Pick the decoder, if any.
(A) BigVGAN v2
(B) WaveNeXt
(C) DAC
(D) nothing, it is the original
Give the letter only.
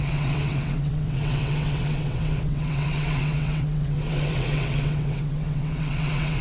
B